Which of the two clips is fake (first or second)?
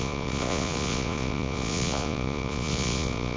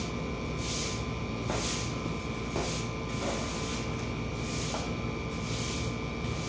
first